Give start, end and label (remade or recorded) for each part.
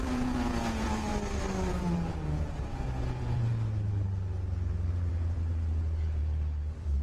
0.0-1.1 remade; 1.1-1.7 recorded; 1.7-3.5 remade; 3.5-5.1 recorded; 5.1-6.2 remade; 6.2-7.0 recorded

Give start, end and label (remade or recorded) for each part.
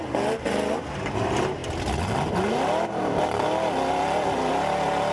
0.0-5.1 recorded